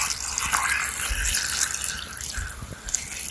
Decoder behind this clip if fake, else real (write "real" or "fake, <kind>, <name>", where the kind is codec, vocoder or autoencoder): real